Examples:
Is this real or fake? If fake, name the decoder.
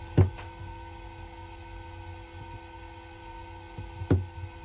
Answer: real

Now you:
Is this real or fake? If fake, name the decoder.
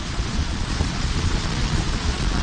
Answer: fake, vocoder, Vocos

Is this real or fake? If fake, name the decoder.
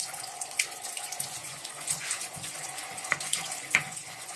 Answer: fake, vocoder, Vocos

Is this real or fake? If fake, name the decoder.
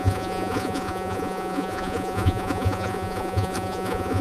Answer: fake, vocoder, Vocos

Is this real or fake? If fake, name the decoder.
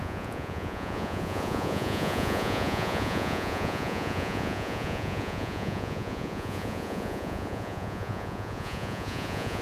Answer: fake, vocoder, Vocos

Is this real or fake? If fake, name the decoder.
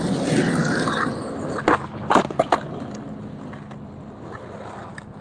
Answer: real